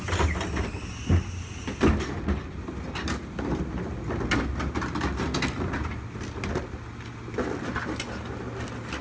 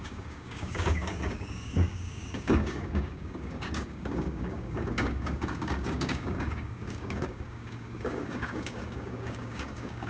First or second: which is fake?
second